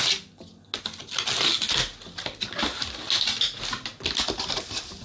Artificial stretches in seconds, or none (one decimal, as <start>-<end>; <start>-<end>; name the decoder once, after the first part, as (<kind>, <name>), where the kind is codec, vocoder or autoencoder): none